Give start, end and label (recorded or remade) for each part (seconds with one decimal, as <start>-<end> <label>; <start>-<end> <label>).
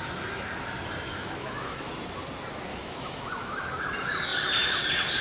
0.0-1.1 recorded; 1.1-1.9 remade; 1.9-2.7 recorded; 2.7-3.6 remade; 3.6-5.2 recorded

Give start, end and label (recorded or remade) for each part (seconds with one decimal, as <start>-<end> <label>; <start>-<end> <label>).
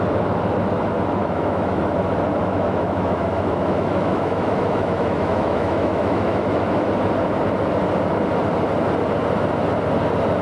0.0-1.2 recorded; 1.2-1.8 remade; 1.8-2.4 recorded; 2.4-6.9 remade; 6.9-10.4 recorded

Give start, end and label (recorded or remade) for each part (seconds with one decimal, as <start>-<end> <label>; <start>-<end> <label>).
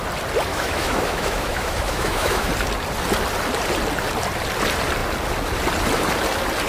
0.0-0.5 recorded; 0.5-2.5 remade; 2.5-6.7 recorded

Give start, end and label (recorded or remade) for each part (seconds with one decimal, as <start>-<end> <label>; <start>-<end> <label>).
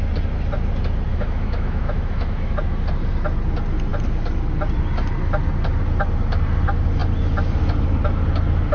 0.0-1.1 recorded; 1.1-2.6 remade; 2.6-8.7 recorded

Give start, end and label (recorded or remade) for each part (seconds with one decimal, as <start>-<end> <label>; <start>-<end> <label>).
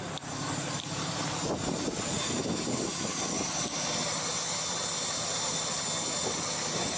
0.0-7.0 recorded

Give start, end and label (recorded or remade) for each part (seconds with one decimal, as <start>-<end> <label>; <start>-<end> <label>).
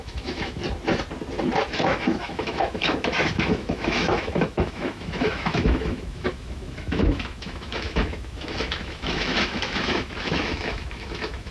0.0-0.6 remade; 0.6-1.7 recorded; 1.7-11.5 remade